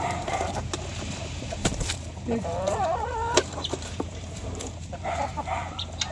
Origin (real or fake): fake